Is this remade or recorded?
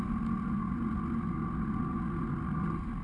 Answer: recorded